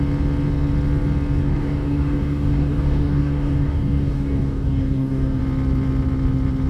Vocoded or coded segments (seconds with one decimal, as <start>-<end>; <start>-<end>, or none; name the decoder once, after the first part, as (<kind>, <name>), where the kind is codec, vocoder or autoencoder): 1.4-5.4 (codec, DAC)